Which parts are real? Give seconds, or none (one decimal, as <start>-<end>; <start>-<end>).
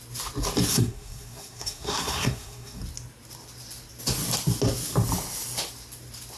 0.0-0.7; 2.8-6.4